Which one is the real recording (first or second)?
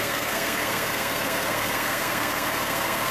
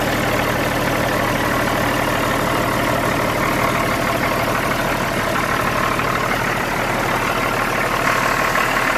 second